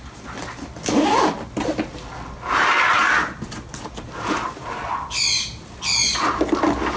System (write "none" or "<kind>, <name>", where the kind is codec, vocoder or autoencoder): none